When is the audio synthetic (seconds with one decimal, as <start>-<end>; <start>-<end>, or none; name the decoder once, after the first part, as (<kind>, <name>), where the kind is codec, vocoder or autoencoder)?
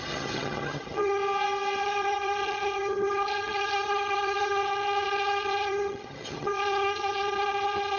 0.0-1.2 (vocoder, HiFi-GAN); 1.8-8.0